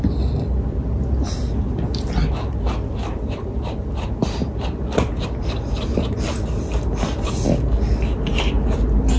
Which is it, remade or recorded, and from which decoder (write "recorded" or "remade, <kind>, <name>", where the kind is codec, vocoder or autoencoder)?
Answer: recorded